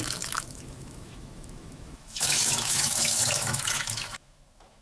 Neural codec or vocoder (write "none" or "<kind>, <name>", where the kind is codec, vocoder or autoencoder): autoencoder, DAC-VAE